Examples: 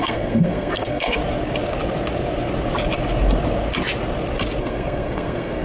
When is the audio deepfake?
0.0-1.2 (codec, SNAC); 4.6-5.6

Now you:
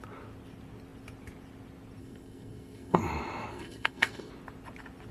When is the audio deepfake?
2.0-3.0 (codec, SNAC); 3.5-4.3

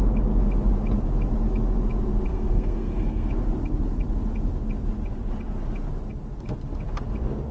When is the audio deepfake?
2.3-3.3 (codec, SNAC)

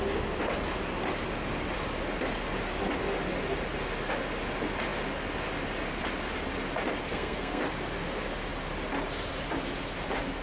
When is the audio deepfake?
7.0-7.6 (codec, SNAC)

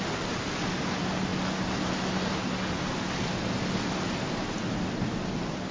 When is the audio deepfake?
none

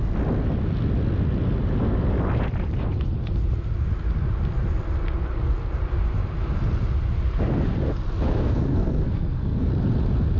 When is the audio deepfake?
8.4-9.7 (codec, SNAC)

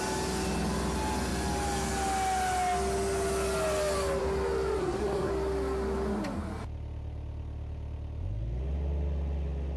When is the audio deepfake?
4.8-5.3 (codec, SNAC)